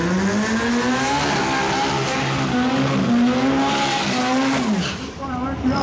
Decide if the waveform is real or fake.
real